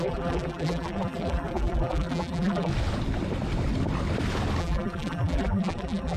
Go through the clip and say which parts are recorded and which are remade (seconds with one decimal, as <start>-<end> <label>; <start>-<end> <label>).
0.0-2.7 remade; 2.7-4.6 recorded; 4.6-6.2 remade

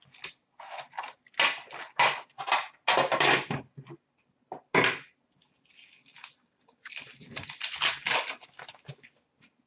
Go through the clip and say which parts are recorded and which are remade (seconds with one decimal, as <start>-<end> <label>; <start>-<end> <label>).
0.0-6.1 recorded; 6.1-7.9 remade; 7.9-9.7 recorded